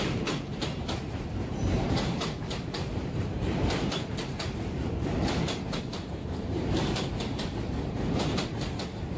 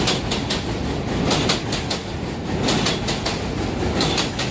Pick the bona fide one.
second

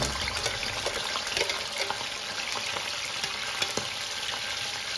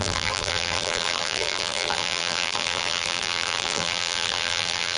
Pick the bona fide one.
first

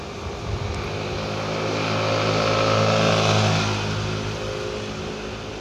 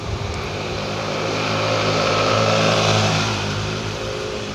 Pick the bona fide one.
first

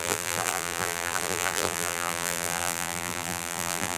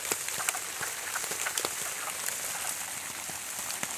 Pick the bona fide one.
second